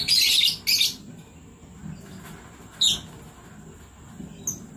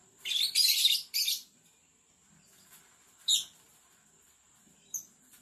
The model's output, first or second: second